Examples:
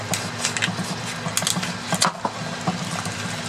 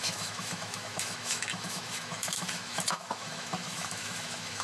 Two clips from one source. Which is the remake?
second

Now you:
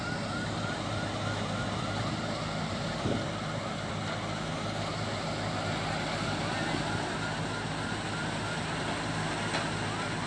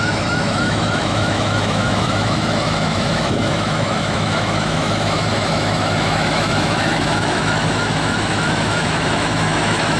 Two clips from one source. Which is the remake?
second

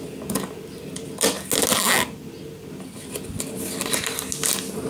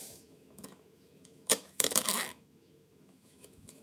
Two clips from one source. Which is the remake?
second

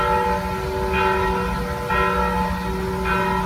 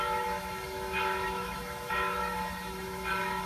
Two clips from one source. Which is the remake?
second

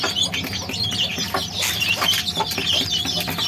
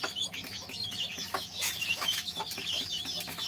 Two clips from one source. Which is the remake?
second